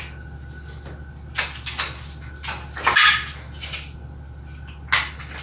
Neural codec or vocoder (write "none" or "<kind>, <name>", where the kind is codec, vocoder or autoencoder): none